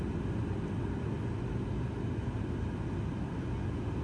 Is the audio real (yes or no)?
yes